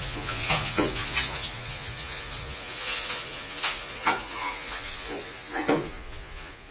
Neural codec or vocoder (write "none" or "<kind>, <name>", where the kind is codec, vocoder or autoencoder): vocoder, Vocos